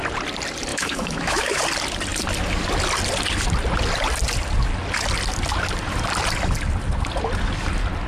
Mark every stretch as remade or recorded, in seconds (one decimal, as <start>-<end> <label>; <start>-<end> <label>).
0.0-0.7 recorded; 0.7-1.6 remade; 1.6-8.1 recorded